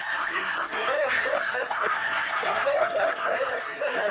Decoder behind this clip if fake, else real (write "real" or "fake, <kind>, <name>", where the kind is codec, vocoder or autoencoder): fake, codec, SNAC